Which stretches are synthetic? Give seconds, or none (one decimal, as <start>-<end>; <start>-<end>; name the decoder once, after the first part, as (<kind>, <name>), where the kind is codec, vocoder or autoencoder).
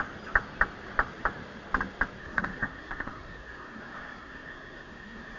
2.2-5.4 (codec, SNAC)